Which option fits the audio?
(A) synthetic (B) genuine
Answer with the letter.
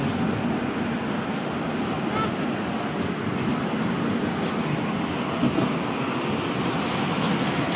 B